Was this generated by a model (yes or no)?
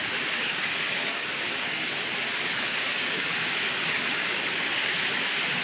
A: yes